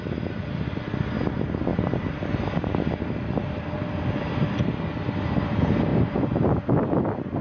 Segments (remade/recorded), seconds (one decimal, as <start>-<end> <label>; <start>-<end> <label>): 0.0-7.4 recorded